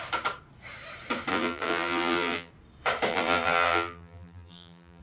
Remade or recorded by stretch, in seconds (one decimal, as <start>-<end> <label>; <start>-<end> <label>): 0.0-1.3 recorded; 1.3-2.5 remade; 2.5-3.1 recorded; 3.1-5.0 remade